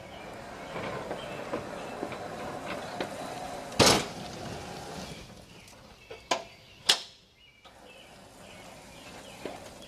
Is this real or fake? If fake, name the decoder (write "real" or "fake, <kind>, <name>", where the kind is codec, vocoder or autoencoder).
real